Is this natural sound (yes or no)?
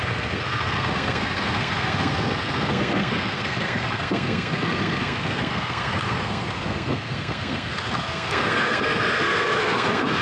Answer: no